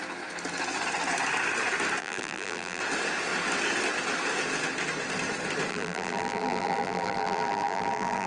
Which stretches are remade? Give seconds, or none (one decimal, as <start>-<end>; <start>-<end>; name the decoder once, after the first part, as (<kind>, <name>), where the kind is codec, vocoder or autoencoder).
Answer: 2.0-2.8 (vocoder, BigVGAN v2); 5.7-8.3